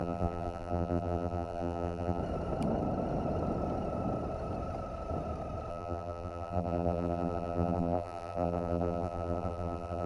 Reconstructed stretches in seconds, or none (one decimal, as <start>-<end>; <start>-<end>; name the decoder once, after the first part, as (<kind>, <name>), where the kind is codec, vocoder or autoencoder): 0.0-2.2 (vocoder, BigVGAN v2); 5.7-10.1